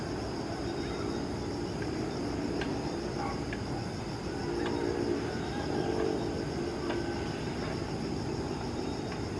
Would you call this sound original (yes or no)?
yes